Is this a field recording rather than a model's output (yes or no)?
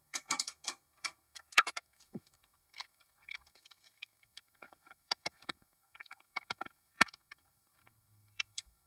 no